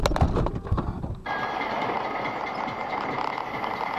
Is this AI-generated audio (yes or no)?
no